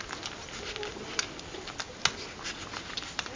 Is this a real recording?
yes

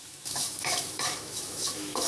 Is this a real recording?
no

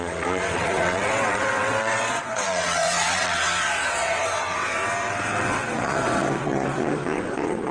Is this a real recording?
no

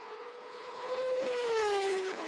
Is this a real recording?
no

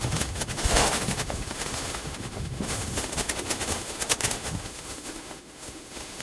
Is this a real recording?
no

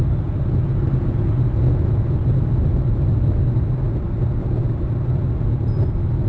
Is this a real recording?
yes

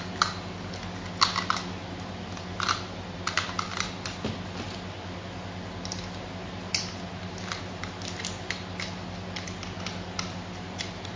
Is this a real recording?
yes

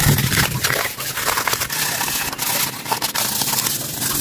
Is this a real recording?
yes